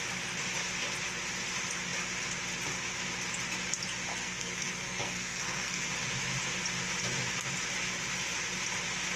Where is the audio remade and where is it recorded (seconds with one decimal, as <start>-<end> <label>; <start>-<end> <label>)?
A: 0.0-4.1 recorded; 4.1-5.9 remade; 5.9-9.2 recorded